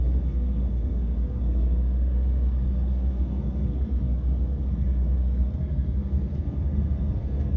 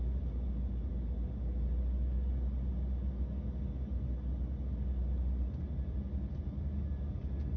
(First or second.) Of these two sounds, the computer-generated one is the first